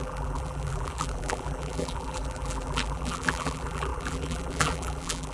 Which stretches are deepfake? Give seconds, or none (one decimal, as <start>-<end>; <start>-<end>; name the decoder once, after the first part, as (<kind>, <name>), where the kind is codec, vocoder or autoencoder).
0.0-5.3 (vocoder, BigVGAN v2)

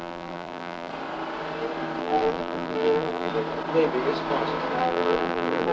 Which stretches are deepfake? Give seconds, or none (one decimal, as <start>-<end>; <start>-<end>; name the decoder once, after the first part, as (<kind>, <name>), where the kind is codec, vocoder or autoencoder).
0.0-0.9 (vocoder, BigVGAN v2); 2.0-3.3; 4.8-5.7

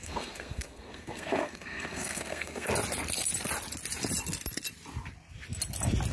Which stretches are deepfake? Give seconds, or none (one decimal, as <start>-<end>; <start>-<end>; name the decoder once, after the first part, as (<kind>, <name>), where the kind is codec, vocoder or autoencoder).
0.0-2.7 (codec, SNAC)

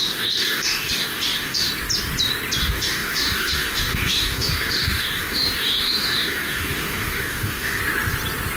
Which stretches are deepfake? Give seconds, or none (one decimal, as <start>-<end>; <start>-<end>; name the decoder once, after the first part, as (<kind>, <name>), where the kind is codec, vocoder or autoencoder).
0.0-1.7 (codec, DAC); 2.6-7.8

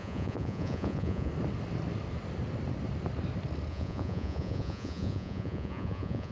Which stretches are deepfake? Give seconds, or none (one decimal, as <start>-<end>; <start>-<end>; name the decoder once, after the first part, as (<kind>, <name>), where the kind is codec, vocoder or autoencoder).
0.0-1.3 (vocoder, Vocos); 3.7-6.3

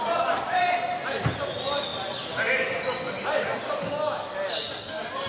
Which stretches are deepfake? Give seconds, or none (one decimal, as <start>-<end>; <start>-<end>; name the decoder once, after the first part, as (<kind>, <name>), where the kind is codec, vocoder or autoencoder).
none